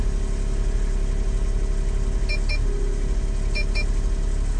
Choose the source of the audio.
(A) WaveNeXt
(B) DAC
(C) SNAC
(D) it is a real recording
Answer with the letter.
D